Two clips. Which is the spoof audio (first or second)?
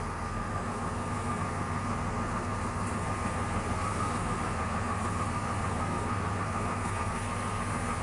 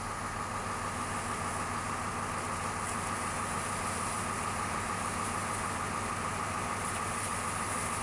first